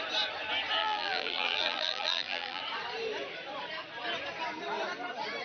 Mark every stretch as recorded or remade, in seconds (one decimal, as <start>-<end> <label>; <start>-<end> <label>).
0.0-0.8 recorded; 0.8-2.6 remade; 2.6-5.4 recorded